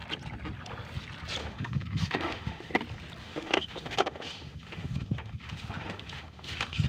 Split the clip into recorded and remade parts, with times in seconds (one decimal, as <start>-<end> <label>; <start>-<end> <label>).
0.0-1.4 recorded; 1.4-2.7 remade; 2.7-3.2 recorded; 3.2-6.9 remade

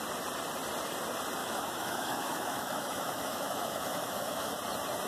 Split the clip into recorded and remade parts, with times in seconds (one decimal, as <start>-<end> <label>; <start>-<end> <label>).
0.0-1.4 recorded; 1.4-4.5 remade; 4.5-5.1 recorded

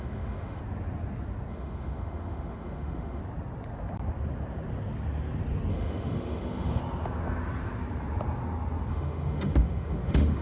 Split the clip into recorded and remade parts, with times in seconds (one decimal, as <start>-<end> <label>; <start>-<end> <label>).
0.0-0.6 remade; 0.6-1.5 recorded; 1.5-3.2 remade; 3.2-5.7 recorded; 5.7-6.8 remade; 6.8-8.9 recorded; 8.9-10.4 remade

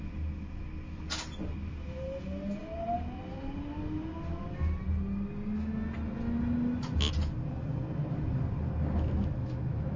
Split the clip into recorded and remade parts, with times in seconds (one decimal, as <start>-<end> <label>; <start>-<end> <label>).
0.0-9.4 recorded; 9.4-10.0 remade